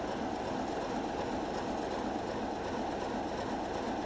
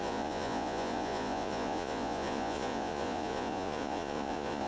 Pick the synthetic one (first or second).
second